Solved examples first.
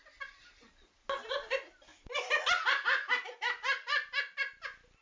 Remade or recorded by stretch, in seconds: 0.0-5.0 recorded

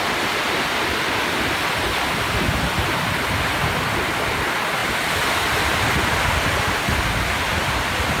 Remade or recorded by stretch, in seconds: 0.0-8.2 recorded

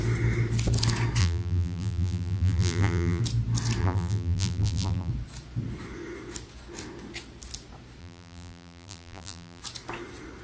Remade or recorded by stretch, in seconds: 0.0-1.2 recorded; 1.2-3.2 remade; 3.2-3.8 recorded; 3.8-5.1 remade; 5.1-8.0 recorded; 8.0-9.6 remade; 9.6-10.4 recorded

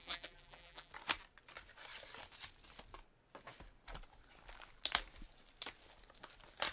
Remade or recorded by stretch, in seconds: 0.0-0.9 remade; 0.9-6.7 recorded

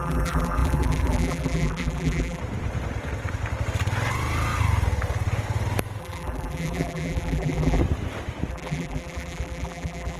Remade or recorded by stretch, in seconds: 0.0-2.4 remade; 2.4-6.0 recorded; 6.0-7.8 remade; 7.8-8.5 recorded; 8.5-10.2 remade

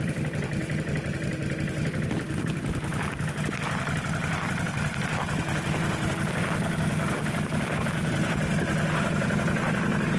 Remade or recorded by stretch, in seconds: 0.0-2.9 remade; 2.9-3.4 recorded; 3.4-6.9 remade; 6.9-8.7 recorded; 8.7-10.2 remade